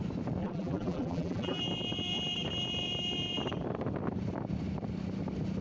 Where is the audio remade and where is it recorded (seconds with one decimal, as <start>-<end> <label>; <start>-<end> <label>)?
0.0-0.4 recorded; 0.4-1.6 remade; 1.6-5.6 recorded